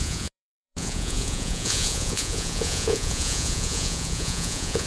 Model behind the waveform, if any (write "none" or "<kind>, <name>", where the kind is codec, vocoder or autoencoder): vocoder, Vocos